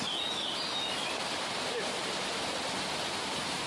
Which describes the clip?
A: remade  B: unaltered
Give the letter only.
B